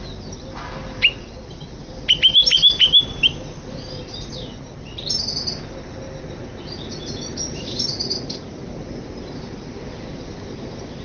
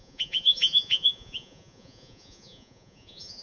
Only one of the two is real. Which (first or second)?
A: first